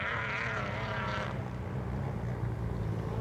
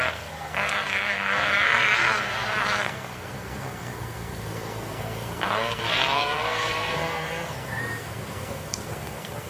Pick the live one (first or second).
first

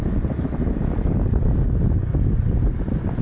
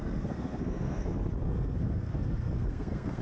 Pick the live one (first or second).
first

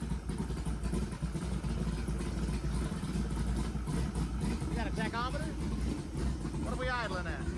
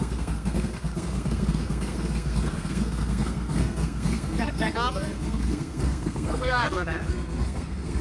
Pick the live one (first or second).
first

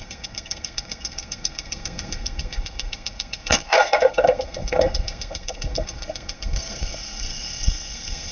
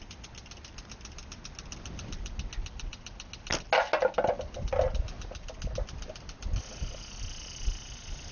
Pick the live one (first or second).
second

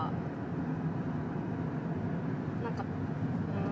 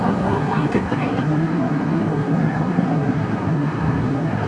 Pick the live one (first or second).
first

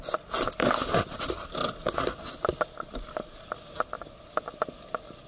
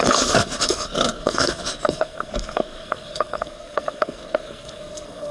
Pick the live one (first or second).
first